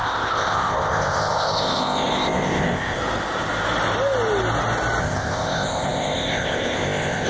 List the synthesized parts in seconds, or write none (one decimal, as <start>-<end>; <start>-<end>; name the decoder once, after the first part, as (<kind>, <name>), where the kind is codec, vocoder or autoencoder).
0.0-3.0 (codec, ZipCodec); 5.0-7.3